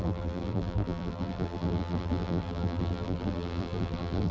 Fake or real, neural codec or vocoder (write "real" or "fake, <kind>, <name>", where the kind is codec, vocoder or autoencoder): fake, vocoder, BigVGAN v2